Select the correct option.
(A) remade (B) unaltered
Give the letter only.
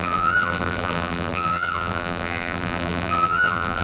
A